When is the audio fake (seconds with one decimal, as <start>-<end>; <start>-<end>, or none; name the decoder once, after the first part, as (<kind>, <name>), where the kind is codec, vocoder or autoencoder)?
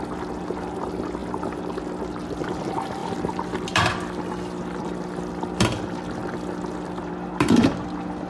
none